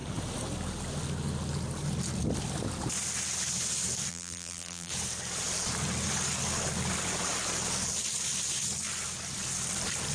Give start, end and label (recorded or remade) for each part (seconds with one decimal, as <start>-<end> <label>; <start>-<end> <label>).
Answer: 0.0-4.1 recorded; 4.1-4.9 remade; 4.9-10.1 recorded